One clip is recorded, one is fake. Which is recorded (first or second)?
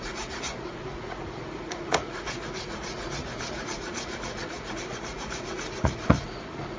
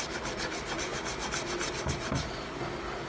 second